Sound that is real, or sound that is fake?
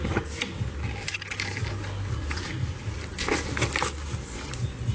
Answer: real